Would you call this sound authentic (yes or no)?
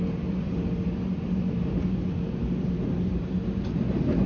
yes